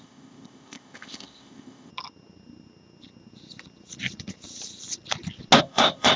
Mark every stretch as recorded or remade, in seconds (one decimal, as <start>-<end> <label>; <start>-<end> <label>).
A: 0.0-1.9 remade; 1.9-5.6 recorded; 5.6-6.2 remade